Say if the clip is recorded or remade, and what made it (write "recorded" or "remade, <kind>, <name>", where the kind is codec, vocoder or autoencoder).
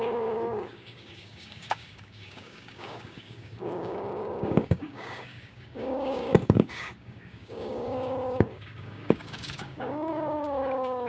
remade, codec, DAC